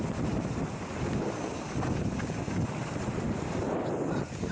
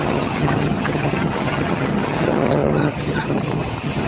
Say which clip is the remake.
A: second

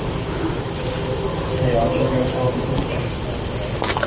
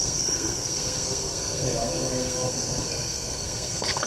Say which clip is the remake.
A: second